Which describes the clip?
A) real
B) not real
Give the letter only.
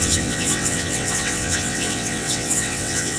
B